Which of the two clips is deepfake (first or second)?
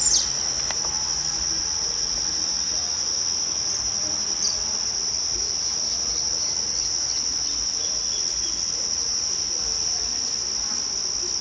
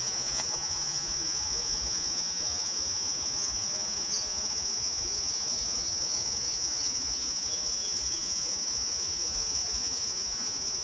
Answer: second